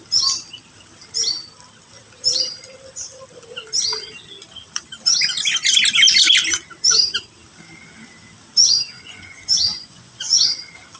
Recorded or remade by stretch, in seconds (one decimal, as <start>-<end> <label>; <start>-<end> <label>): 0.0-8.6 recorded; 8.6-10.5 remade; 10.5-11.0 recorded

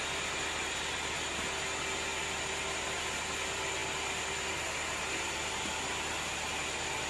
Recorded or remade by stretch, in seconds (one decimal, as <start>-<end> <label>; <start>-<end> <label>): 0.0-7.1 recorded